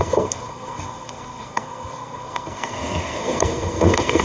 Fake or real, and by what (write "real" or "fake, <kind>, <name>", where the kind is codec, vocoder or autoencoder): fake, codec, SNAC